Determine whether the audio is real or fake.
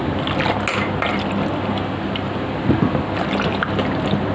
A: real